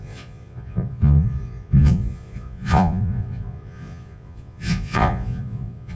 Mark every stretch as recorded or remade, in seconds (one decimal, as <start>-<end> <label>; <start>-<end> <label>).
0.0-6.0 remade